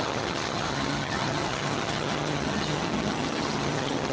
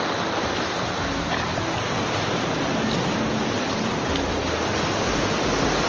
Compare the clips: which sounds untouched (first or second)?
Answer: second